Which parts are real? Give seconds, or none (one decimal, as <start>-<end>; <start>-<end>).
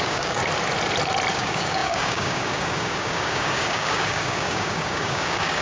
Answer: 0.4-1.3